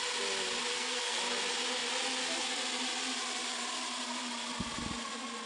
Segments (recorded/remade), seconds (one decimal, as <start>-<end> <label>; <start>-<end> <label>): 0.0-0.7 recorded; 0.7-1.2 remade; 1.2-5.5 recorded